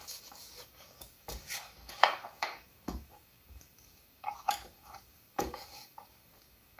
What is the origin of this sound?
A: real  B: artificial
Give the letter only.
B